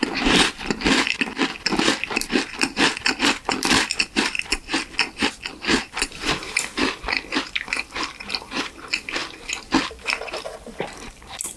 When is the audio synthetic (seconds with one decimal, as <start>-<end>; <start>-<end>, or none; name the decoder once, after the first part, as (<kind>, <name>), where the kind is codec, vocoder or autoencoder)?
0.0-4.7 (vocoder, BigVGAN v2); 5.8-9.2; 9.9-11.6